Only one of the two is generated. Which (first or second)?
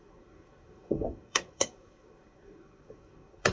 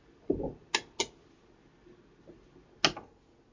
first